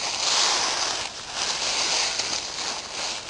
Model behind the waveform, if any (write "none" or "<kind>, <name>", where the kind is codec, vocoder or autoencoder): none